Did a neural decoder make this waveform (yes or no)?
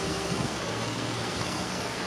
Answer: yes